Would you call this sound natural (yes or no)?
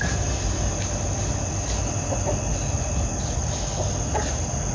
yes